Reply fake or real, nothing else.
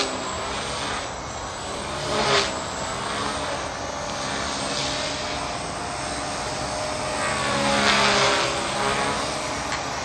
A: real